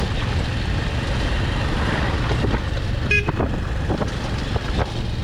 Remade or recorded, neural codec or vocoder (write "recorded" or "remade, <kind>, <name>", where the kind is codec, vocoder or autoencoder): recorded